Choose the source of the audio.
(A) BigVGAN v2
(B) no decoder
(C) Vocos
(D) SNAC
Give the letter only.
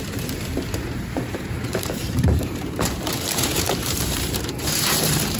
A